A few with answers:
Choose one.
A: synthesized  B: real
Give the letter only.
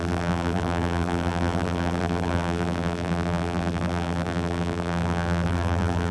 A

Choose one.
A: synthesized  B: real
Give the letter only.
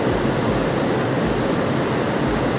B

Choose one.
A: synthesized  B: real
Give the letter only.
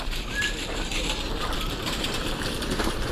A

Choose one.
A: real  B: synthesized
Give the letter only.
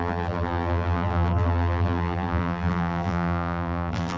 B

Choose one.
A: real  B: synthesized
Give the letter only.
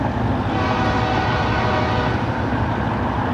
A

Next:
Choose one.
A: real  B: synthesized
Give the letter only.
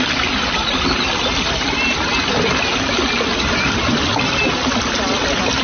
A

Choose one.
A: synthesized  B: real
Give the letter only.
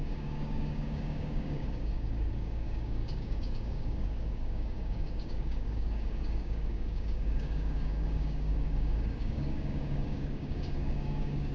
A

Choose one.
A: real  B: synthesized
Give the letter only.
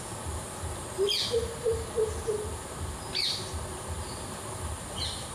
A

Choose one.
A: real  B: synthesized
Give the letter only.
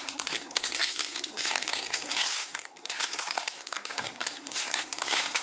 B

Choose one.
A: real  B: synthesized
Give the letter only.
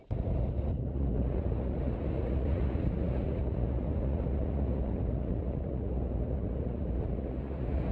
B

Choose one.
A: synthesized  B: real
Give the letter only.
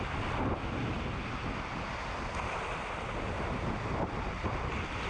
B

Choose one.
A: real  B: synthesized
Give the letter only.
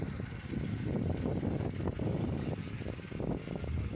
A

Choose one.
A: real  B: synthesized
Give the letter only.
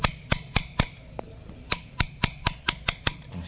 A